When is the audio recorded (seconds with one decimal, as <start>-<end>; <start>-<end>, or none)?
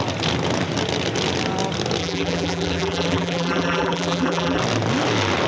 0.0-2.0; 4.6-5.5